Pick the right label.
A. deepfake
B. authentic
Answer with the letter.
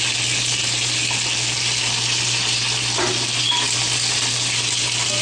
B